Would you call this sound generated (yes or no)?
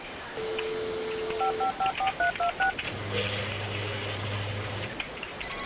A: no